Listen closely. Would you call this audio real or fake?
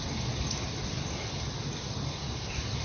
real